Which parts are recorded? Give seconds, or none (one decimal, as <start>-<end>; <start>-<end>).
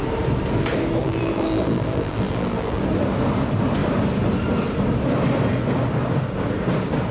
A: 0.0-1.0; 2.8-7.1